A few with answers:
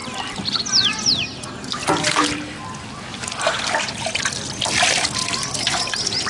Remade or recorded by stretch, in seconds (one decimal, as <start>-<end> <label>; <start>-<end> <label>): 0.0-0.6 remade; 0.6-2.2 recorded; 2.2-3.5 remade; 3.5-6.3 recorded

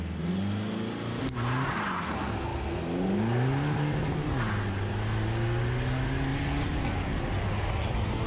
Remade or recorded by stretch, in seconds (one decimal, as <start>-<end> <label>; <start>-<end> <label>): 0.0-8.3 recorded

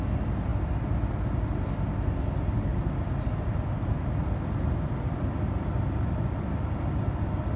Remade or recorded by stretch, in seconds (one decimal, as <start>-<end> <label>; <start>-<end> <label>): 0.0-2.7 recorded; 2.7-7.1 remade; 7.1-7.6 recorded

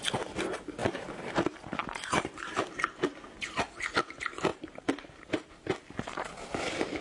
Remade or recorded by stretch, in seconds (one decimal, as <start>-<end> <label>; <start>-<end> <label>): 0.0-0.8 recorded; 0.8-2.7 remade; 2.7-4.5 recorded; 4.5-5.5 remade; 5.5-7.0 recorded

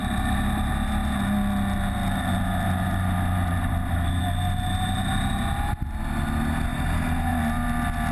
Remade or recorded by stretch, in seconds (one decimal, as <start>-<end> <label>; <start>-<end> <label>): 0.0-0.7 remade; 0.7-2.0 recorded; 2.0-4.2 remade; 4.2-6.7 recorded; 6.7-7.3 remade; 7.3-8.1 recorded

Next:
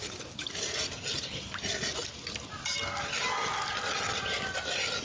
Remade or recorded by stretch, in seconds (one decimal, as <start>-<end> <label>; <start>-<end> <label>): 0.0-5.0 recorded

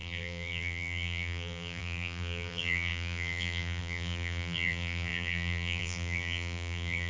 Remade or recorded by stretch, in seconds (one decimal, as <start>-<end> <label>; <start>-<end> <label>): 0.0-7.1 remade